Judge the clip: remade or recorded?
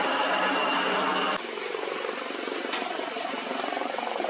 remade